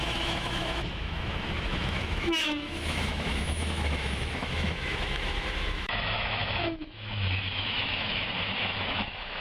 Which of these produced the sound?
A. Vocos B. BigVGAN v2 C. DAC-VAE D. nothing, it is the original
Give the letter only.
C